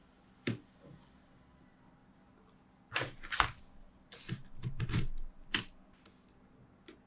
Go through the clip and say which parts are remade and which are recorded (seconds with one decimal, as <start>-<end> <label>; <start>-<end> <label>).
0.0-7.1 recorded